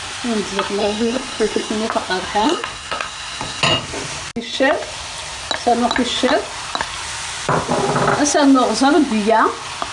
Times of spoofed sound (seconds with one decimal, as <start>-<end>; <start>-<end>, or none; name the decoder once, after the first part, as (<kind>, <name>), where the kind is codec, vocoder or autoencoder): 0.8-1.7 (codec, SNAC); 2.4-3.6